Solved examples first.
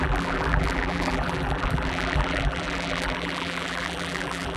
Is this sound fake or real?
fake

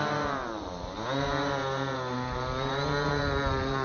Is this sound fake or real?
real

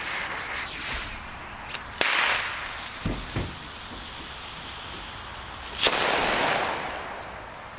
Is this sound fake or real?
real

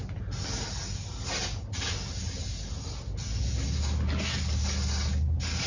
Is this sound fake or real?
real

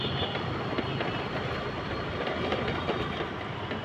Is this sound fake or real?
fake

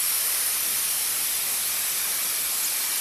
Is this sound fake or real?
real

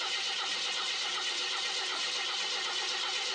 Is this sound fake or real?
real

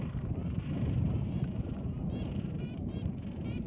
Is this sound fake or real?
fake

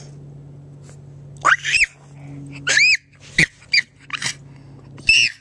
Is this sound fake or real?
real